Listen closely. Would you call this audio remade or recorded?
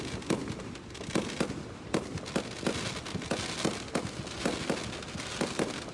recorded